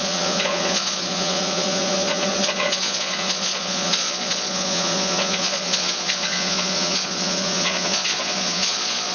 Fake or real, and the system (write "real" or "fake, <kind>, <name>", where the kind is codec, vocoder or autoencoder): fake, vocoder, Vocos